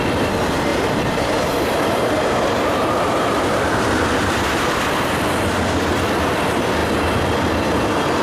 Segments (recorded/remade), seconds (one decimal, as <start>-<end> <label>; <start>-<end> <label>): 0.0-0.7 recorded; 0.7-4.8 remade; 4.8-8.2 recorded